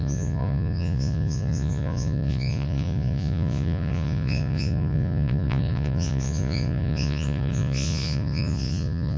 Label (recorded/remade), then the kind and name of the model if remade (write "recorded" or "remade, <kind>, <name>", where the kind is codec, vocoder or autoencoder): remade, vocoder, Vocos